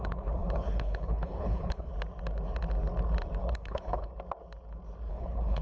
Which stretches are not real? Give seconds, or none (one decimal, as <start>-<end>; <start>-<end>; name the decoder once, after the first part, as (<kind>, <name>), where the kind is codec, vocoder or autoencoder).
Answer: 0.0-1.9 (codec, HILCodec); 3.4-4.1; 5.1-5.6